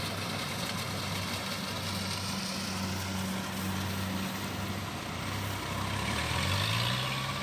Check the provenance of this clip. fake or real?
real